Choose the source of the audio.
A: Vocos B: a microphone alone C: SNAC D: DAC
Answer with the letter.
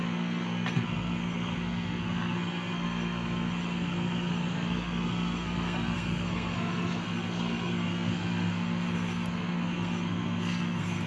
C